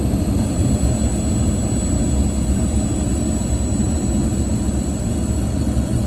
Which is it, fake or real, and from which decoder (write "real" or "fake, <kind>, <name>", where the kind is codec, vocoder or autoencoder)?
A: real